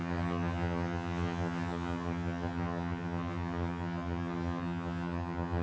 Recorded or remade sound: remade